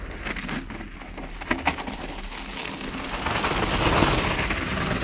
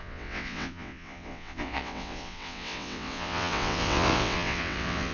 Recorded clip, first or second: first